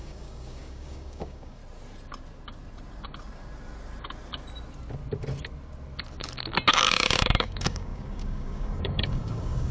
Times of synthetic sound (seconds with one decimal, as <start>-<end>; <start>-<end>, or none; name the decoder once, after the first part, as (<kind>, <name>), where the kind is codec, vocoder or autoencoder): 0.0-1.6 (codec, DAC); 6.7-9.7